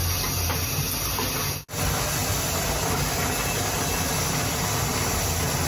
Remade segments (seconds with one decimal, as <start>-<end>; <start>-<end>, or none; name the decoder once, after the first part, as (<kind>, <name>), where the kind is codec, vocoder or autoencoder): none